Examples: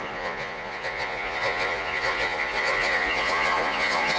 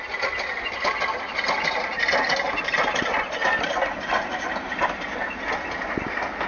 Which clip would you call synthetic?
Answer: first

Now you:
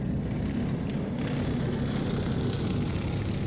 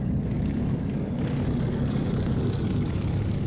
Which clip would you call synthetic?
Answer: second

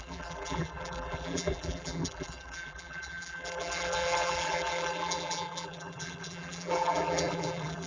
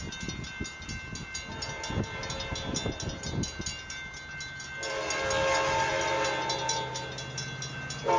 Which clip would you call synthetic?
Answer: first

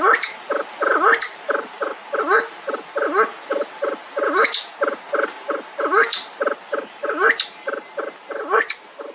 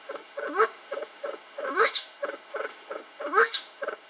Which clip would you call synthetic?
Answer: second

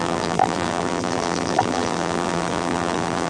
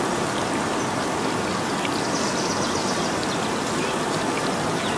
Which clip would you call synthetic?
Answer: first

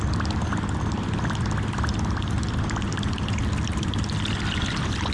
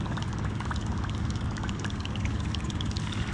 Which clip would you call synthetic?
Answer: second